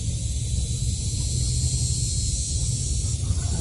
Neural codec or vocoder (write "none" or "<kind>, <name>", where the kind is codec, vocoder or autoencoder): none